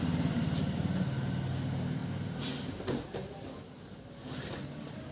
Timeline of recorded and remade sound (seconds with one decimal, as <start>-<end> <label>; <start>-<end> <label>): 0.0-5.1 recorded